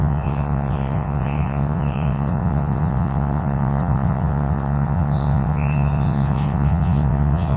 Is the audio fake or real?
fake